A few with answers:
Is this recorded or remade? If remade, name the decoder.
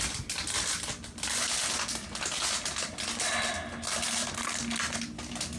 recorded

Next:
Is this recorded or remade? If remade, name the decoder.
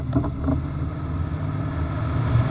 recorded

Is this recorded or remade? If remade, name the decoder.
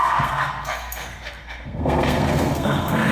remade, codec, SNAC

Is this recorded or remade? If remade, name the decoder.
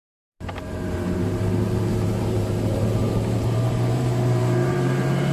remade, vocoder, BigVGAN v2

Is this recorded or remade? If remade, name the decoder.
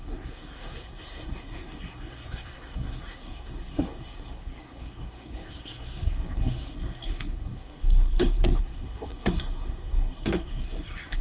remade, codec, SNAC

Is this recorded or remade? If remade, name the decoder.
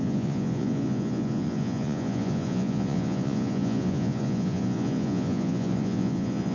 remade, vocoder, Vocos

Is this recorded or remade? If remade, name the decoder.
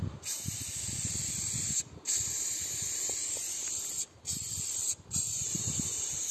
recorded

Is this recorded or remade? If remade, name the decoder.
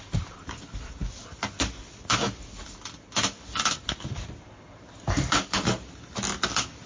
recorded